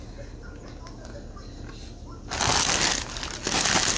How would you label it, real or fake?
real